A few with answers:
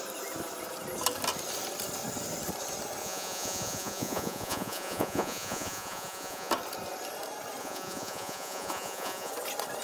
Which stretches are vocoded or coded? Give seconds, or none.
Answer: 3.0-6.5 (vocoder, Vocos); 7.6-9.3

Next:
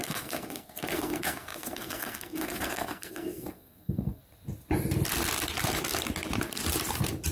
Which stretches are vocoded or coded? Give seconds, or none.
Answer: 0.0-4.2 (codec, SNAC)

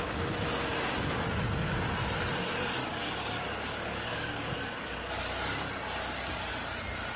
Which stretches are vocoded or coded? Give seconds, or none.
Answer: 2.8-5.2 (codec, DAC)

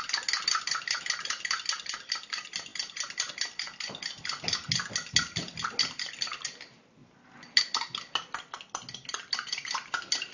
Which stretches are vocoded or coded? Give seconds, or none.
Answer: none

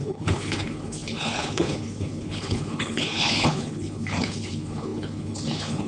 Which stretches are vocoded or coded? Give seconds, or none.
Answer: 0.0-5.9 (codec, HILCodec)

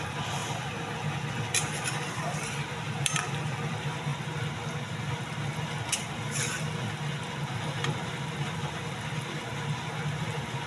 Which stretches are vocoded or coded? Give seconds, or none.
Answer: 0.0-0.4 (vocoder, BigVGAN v2); 1.7-4.1; 7.6-10.7

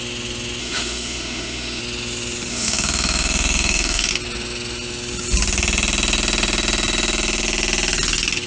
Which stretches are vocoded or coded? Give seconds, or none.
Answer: 0.6-1.8 (autoencoder, DAC-VAE); 2.5-4.1